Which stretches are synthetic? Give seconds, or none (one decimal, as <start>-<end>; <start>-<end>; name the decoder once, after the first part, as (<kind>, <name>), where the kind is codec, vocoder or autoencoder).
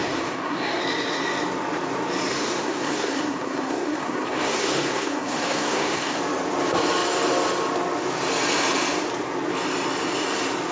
0.0-0.8 (codec, SNAC); 2.3-6.2